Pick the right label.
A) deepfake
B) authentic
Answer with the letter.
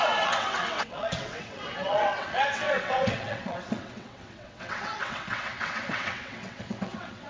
A